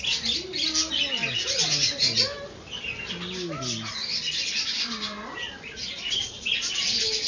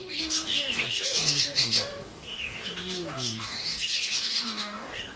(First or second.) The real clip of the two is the first